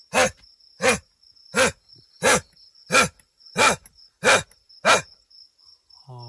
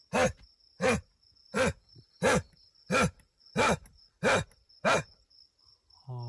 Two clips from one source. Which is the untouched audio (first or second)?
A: first